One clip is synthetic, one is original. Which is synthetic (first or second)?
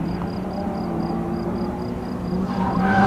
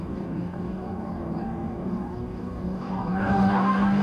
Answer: second